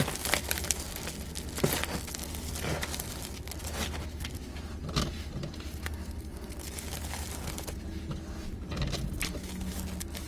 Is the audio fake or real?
real